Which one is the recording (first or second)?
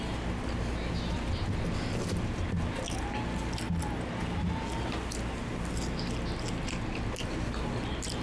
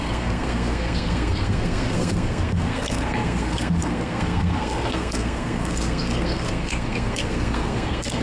first